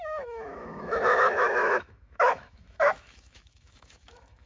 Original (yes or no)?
no